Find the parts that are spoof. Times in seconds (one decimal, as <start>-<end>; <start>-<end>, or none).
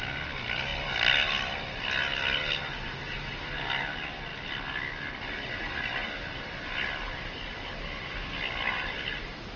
none